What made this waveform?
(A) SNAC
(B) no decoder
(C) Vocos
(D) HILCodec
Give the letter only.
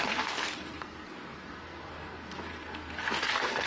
A